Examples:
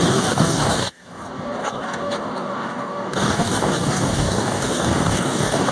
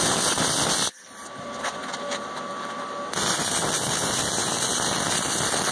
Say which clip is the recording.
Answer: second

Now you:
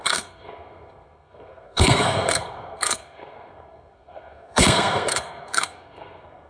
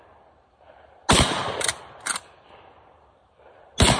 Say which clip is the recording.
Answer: second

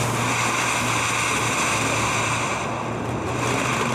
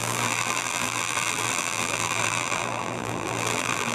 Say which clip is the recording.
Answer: first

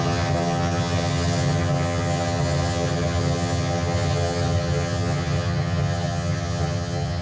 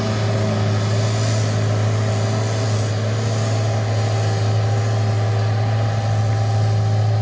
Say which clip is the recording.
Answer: second